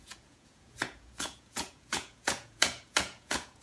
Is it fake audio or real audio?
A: fake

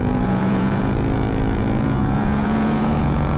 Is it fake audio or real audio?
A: fake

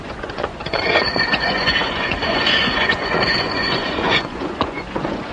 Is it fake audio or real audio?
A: fake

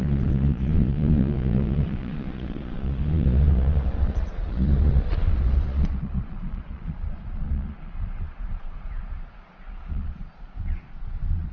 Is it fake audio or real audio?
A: fake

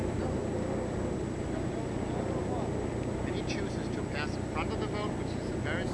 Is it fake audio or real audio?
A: real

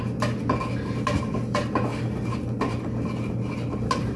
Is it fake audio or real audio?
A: real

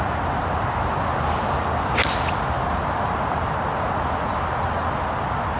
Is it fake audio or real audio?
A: real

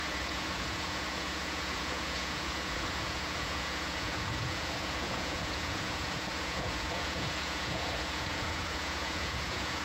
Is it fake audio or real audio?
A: fake